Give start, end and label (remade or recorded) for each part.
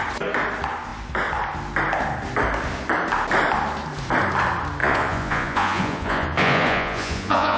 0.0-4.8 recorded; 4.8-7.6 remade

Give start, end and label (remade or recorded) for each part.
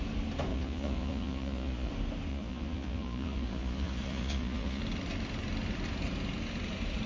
0.0-0.5 recorded; 0.5-1.9 remade; 1.9-2.3 recorded; 2.3-4.8 remade; 4.8-7.1 recorded